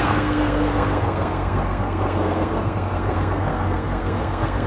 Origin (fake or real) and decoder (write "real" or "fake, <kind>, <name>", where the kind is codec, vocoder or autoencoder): fake, codec, SNAC